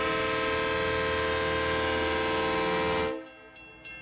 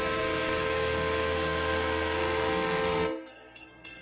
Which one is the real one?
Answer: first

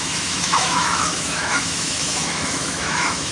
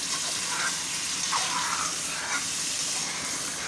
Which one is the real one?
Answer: second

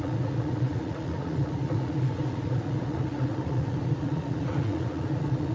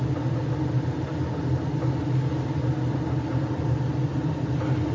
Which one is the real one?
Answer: second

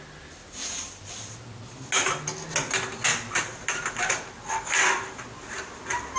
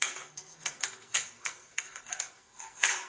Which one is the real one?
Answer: first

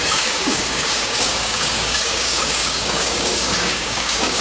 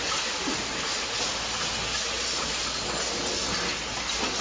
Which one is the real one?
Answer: second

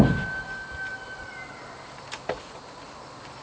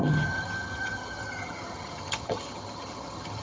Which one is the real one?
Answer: first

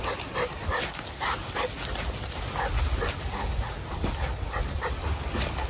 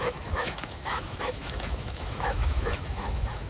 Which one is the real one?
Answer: first